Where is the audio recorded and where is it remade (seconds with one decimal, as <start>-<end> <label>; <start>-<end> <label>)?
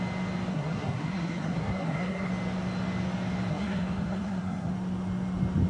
0.0-0.5 recorded; 0.5-2.3 remade; 2.3-3.5 recorded; 3.5-4.7 remade; 4.7-5.7 recorded